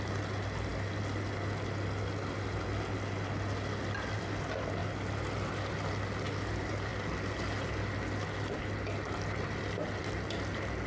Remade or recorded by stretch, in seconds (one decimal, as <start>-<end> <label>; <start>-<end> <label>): 0.0-10.9 recorded